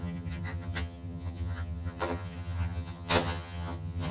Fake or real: fake